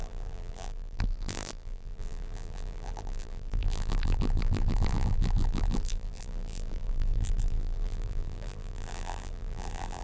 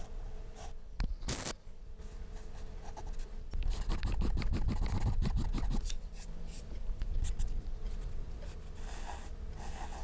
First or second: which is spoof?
first